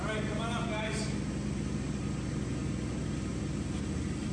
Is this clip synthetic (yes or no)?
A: no